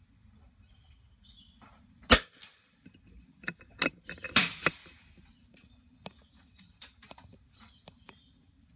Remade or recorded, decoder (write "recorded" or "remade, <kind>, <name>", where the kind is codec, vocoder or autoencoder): recorded